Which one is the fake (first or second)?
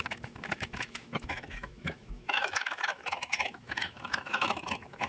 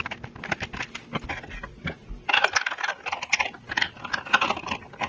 first